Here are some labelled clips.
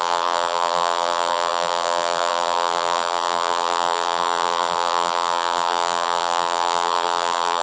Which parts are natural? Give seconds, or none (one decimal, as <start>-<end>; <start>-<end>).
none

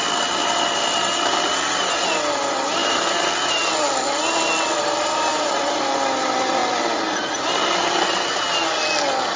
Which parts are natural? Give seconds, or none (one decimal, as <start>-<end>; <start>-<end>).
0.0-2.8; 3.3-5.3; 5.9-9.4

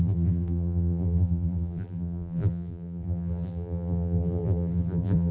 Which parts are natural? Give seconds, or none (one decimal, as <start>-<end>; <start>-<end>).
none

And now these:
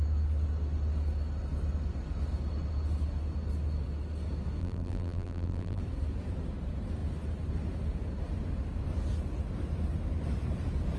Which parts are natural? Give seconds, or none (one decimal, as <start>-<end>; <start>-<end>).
0.0-4.6; 5.8-11.0

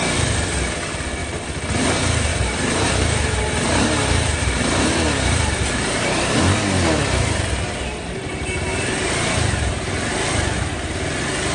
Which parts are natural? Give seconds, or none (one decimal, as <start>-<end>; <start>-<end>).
0.0-2.3; 6.4-8.7; 9.7-11.5

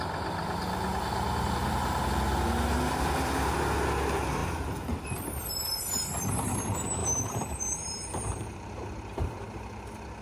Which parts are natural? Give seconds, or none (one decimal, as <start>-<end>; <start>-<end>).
0.0-7.0; 9.0-10.2